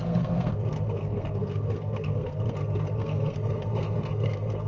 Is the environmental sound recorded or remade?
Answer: remade